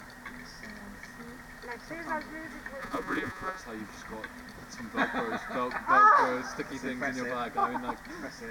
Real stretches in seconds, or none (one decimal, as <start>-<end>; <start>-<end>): 0.0-2.8; 3.6-8.5